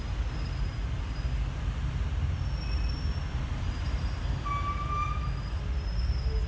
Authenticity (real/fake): real